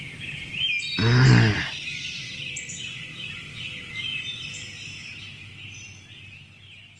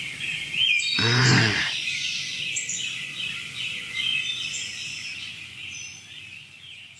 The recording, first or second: first